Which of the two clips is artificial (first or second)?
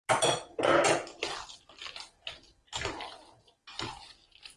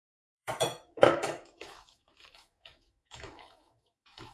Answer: second